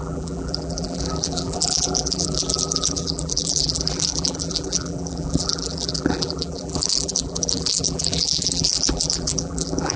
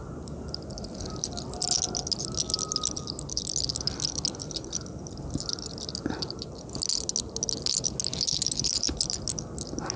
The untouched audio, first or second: second